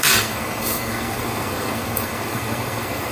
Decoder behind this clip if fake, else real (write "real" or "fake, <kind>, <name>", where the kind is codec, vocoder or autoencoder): fake, codec, SNAC